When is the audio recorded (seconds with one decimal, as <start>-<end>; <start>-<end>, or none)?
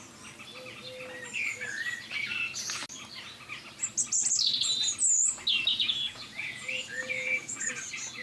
0.0-5.7; 7.7-8.2